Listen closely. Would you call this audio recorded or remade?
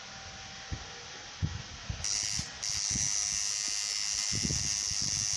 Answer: recorded